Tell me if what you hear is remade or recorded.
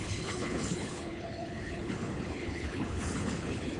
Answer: remade